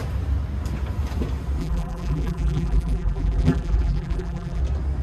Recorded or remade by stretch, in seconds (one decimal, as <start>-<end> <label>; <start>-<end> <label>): 0.0-1.6 recorded; 1.6-4.6 remade; 4.6-5.0 recorded